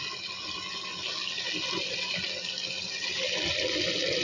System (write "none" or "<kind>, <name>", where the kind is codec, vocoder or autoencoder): none